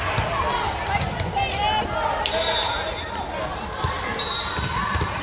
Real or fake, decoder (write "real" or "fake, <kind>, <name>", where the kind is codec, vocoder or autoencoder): real